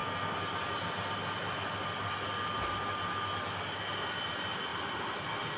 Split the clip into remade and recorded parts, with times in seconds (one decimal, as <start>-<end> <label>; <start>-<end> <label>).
0.0-5.6 recorded